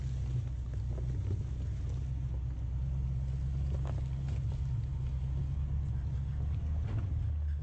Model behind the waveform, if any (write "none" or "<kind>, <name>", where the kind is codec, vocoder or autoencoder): none